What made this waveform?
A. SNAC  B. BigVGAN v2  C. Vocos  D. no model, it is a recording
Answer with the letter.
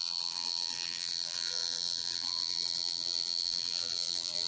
B